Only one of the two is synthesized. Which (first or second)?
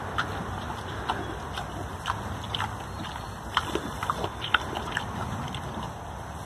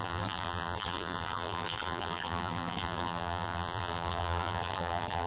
second